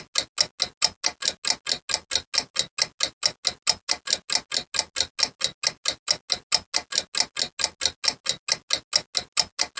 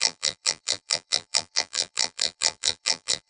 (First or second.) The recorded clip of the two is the first